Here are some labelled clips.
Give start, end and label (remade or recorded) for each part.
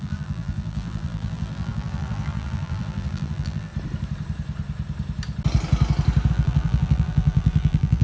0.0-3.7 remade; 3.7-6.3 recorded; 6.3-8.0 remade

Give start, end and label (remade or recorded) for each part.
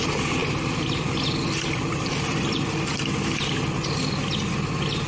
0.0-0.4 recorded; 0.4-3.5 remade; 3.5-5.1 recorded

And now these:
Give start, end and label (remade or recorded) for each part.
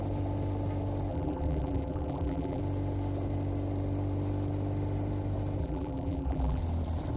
0.0-1.1 recorded; 1.1-2.6 remade; 2.6-5.6 recorded; 5.6-6.6 remade; 6.6-7.2 recorded